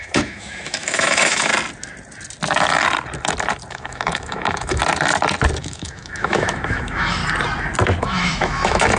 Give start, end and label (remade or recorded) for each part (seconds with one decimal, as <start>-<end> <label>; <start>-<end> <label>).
0.0-1.5 remade; 1.5-3.7 recorded; 3.7-4.8 remade; 4.8-5.6 recorded; 5.6-7.2 remade; 7.2-8.0 recorded; 8.0-9.0 remade